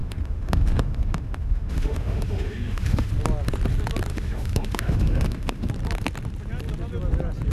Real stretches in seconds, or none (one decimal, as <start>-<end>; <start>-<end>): 3.1-4.1; 5.7-7.5